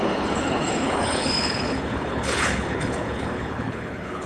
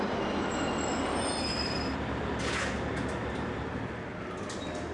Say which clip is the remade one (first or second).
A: first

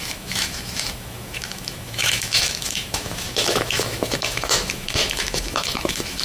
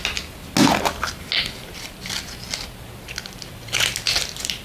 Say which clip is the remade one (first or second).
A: first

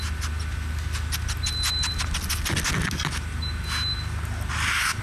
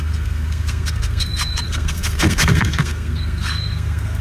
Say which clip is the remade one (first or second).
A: second